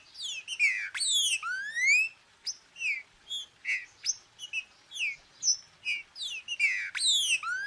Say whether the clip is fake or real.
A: real